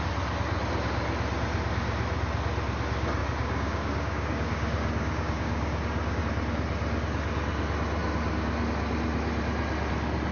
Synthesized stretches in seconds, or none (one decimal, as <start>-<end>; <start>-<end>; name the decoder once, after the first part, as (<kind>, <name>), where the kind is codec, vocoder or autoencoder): 3.2-6.2 (codec, DAC)